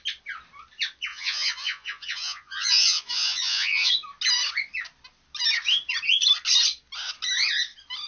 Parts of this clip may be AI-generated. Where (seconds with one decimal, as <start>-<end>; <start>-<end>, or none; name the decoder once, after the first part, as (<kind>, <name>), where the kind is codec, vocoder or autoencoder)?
1.1-3.9 (vocoder, Vocos)